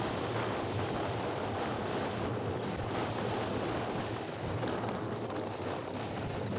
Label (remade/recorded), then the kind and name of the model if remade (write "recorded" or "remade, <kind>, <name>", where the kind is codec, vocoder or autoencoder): recorded